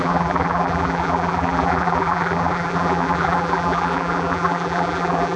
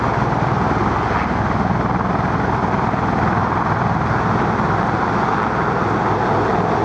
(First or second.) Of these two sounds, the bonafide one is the second